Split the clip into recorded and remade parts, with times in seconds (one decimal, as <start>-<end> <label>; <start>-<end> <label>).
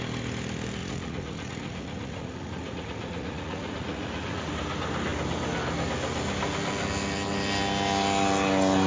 0.0-0.8 recorded; 0.8-4.5 remade; 4.5-8.9 recorded